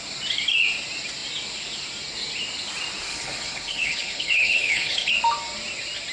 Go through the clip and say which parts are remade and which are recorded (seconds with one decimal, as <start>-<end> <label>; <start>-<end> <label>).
0.0-3.1 recorded; 3.1-5.1 remade; 5.1-6.1 recorded